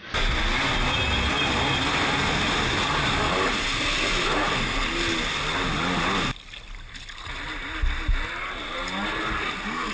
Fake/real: real